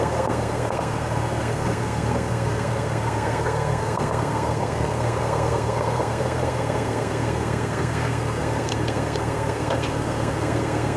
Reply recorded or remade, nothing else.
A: remade